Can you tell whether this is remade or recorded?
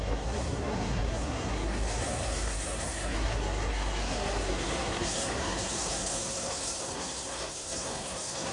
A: remade